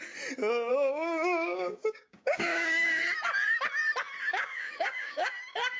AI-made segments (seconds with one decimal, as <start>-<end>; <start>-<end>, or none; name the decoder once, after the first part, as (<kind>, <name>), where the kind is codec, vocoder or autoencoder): 0.7-3.0 (codec, DAC); 4.3-5.3